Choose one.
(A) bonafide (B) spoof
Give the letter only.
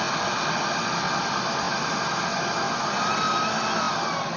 A